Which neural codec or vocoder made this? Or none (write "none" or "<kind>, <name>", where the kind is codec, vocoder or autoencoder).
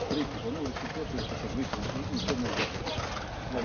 none